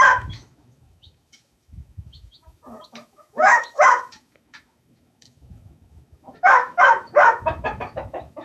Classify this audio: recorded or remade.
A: remade